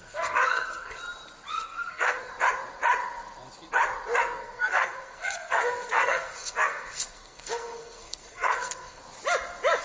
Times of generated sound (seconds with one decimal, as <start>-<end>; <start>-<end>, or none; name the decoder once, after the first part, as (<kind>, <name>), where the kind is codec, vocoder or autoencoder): 0.0-1.0 (codec, SNAC); 1.5-2.3; 4.2-9.0

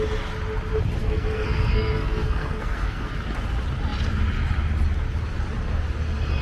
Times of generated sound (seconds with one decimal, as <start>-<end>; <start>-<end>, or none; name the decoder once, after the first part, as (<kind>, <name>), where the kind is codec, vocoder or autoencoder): 1.0-3.1 (codec, SNAC)

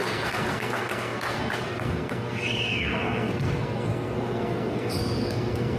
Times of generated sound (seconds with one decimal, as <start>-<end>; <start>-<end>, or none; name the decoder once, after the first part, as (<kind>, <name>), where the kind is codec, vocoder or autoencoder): 0.0-5.8 (codec, SNAC)

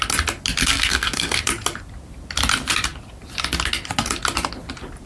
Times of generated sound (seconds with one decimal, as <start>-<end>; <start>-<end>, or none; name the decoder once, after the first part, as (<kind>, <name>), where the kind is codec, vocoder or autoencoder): 0.6-1.4 (codec, SNAC)

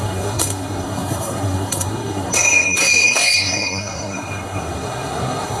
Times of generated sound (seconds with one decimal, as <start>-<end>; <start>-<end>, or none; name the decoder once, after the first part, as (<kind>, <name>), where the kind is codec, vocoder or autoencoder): 0.0-5.6 (codec, SNAC)